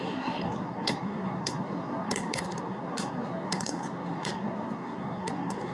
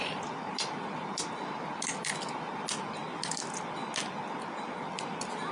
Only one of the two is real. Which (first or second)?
second